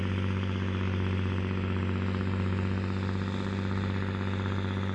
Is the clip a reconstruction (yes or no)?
no